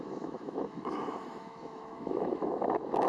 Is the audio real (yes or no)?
no